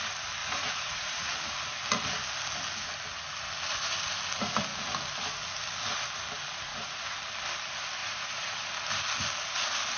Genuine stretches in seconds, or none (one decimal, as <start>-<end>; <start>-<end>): 0.0-0.4; 1.3-6.7; 7.2-8.0; 8.6-10.0